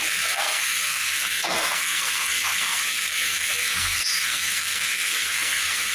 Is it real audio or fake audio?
fake